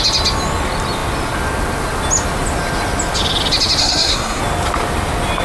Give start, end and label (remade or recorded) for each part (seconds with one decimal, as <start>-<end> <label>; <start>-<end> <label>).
0.0-3.8 recorded; 3.8-4.4 remade; 4.4-5.4 recorded